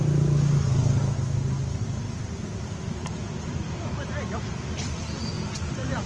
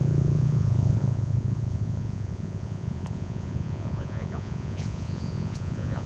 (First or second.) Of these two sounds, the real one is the first